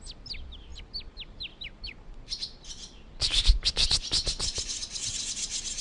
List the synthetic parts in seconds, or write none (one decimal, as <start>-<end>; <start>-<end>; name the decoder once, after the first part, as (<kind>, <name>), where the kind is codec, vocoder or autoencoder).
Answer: none

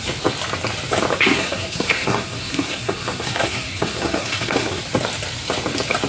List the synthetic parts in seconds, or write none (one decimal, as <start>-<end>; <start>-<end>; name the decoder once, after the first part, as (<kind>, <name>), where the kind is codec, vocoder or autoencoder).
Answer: 1.1-4.8 (codec, SNAC)

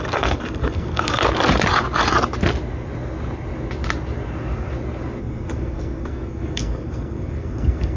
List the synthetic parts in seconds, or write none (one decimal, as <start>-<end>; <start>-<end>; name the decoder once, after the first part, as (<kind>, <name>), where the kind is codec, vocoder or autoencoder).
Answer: 0.0-1.2 (codec, SNAC); 5.2-8.0

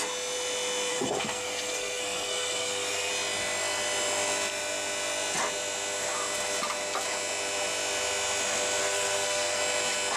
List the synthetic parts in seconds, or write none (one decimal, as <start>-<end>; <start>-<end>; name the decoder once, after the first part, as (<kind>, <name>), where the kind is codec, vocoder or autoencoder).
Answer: 0.9-3.1 (codec, SNAC); 8.8-9.6